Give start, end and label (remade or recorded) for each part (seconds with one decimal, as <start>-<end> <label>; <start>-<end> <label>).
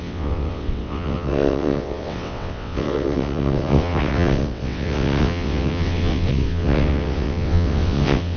0.0-8.4 remade